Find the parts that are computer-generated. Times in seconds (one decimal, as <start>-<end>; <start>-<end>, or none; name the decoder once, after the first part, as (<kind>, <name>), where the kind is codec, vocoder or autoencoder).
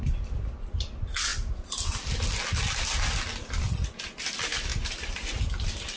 4.7-5.4 (vocoder, BigVGAN v2)